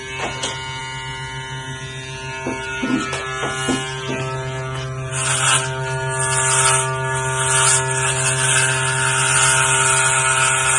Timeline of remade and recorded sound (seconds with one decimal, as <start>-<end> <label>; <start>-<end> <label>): 0.0-10.8 recorded